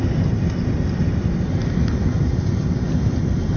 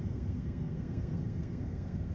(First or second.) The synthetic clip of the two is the second